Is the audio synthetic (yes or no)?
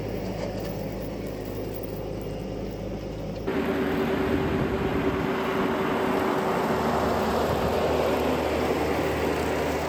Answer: no